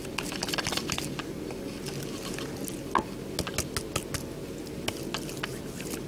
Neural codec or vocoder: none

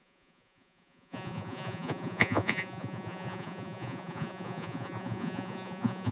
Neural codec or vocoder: vocoder, Vocos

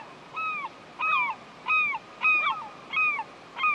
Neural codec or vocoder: none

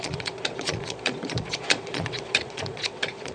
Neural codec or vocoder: vocoder, Vocos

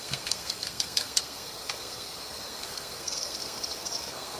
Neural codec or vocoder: codec, SNAC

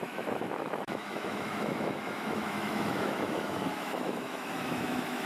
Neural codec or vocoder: autoencoder, DAC-VAE